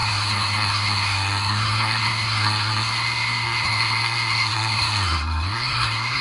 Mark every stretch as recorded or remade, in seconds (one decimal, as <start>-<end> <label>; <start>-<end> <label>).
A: 0.0-6.2 remade